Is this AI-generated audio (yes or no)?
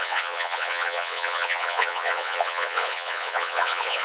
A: yes